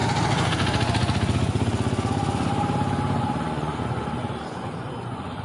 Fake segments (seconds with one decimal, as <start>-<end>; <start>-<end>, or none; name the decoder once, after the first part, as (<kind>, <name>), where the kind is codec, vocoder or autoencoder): 3.2-5.4 (vocoder, Vocos)